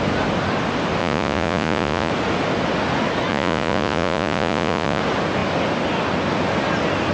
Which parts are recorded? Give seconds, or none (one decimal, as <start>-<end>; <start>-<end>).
0.0-1.0; 2.1-3.3; 5.0-7.1